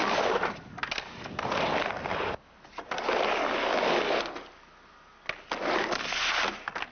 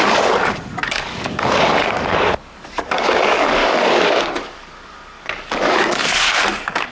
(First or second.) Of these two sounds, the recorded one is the first